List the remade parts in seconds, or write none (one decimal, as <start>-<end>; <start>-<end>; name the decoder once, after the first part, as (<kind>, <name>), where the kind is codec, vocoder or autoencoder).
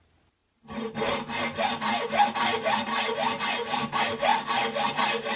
none